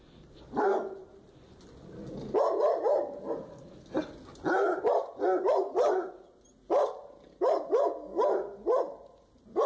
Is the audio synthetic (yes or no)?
no